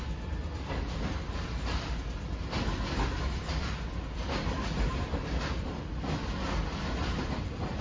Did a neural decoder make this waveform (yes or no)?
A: no